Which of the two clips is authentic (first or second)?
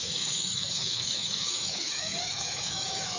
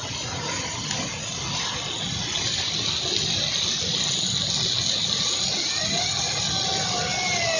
second